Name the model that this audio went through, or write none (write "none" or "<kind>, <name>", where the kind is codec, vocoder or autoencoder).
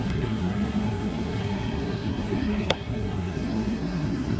codec, SNAC